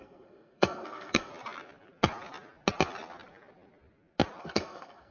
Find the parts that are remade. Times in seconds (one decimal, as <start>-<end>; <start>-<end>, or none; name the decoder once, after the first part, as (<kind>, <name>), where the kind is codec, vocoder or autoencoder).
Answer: 0.0-1.3 (codec, SNAC); 4.4-5.1